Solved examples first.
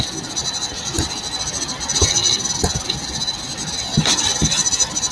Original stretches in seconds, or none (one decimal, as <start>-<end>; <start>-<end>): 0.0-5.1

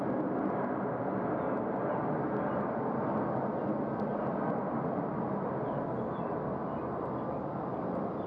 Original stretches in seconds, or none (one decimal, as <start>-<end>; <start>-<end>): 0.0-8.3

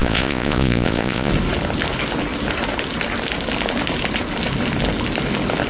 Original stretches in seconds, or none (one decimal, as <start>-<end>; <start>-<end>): 1.3-5.7

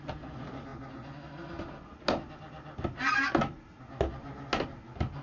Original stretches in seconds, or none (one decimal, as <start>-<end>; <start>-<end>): 0.0-5.2